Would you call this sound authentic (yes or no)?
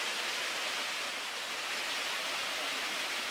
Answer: yes